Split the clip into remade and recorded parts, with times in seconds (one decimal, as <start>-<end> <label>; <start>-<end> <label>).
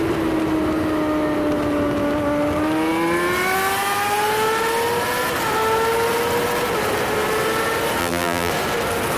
0.0-8.0 recorded; 8.0-8.5 remade; 8.5-9.2 recorded